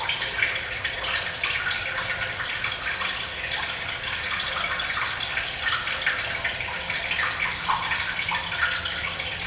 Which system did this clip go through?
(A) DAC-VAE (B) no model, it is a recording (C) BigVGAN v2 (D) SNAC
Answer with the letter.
B